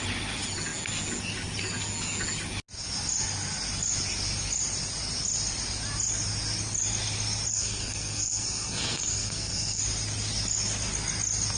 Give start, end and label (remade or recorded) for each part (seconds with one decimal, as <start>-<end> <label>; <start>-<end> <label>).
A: 0.0-7.5 recorded; 7.5-9.8 remade; 9.8-11.6 recorded